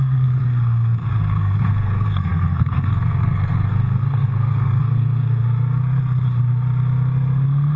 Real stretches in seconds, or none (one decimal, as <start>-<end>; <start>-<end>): 5.4-7.8